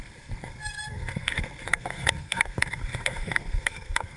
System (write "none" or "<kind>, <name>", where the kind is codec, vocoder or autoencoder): codec, SNAC